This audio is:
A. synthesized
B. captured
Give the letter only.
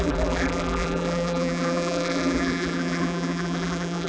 A